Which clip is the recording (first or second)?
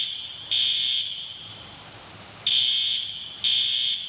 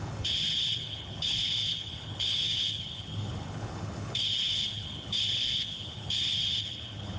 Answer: first